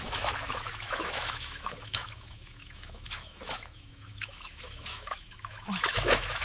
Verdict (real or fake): fake